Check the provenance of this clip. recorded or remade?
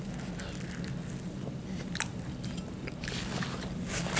recorded